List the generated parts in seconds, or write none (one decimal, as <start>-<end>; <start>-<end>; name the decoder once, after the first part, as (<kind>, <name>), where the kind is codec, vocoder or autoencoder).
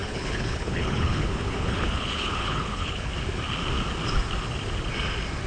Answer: 0.0-3.1 (codec, HILCodec)